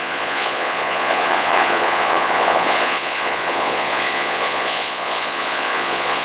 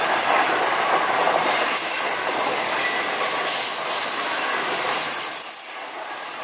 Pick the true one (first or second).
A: second